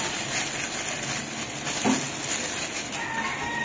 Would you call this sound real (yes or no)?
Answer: yes